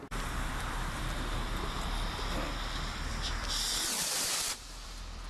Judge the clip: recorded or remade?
remade